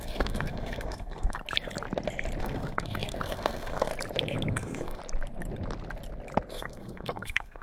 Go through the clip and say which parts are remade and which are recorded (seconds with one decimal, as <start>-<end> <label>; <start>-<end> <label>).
0.0-1.4 remade; 1.4-2.4 recorded; 2.4-3.9 remade; 3.9-4.5 recorded; 4.5-5.0 remade; 5.0-6.5 recorded; 6.5-7.6 remade